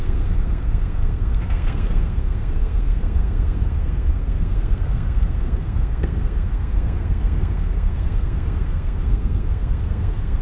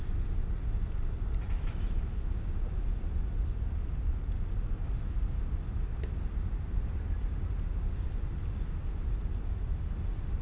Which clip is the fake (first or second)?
first